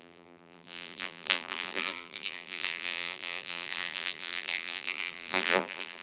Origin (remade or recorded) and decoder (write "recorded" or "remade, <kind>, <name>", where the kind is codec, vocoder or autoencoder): remade, vocoder, BigVGAN v2